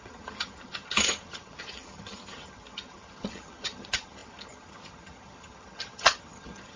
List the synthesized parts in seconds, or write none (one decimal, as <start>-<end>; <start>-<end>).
0.0-6.8